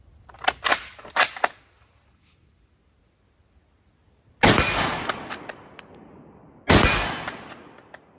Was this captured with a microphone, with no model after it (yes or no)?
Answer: yes